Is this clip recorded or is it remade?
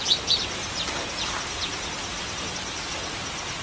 recorded